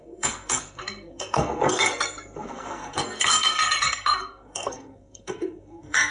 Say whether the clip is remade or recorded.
remade